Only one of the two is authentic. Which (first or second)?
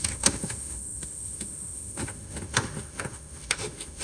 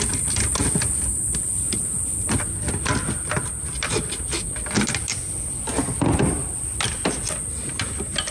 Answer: second